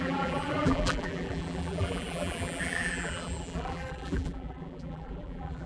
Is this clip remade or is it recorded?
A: remade